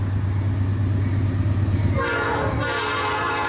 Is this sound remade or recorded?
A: recorded